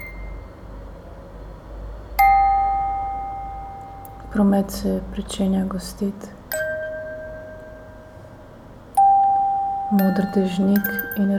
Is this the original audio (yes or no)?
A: yes